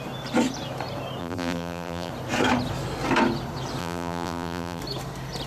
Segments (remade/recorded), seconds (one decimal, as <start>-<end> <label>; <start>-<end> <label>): 0.0-1.2 recorded; 1.2-2.1 remade; 2.1-3.8 recorded; 3.8-4.8 remade; 4.8-5.5 recorded